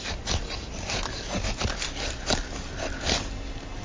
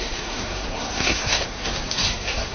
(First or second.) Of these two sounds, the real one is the first